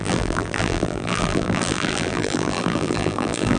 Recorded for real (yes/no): no